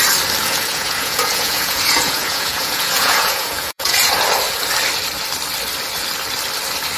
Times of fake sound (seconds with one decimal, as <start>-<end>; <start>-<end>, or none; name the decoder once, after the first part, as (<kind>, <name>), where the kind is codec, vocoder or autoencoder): 0.4-4.1 (vocoder, Vocos)